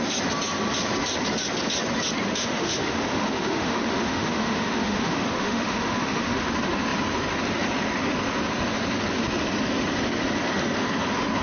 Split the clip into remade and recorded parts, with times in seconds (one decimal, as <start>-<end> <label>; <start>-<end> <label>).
0.0-2.4 recorded; 2.4-6.4 remade; 6.4-11.4 recorded